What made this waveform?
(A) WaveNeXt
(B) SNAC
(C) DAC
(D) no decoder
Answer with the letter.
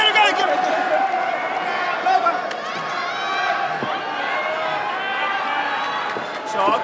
D